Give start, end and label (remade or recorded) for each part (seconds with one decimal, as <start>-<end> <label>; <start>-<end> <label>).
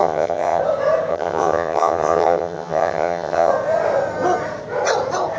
0.0-0.6 remade; 0.6-1.1 recorded; 1.1-3.5 remade; 3.5-5.4 recorded